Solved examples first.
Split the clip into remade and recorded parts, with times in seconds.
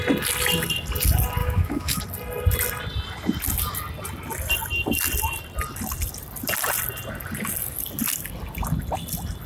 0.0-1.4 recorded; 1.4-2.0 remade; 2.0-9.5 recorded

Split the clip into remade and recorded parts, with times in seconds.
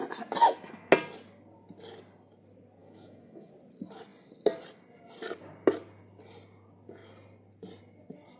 0.0-0.4 recorded; 0.4-0.9 remade; 0.9-2.8 recorded; 2.8-3.5 remade; 3.5-8.4 recorded